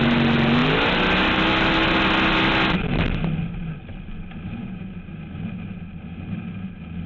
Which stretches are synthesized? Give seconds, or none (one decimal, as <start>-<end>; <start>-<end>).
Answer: none